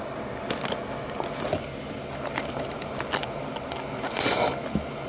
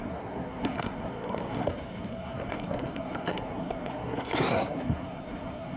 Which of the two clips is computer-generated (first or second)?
second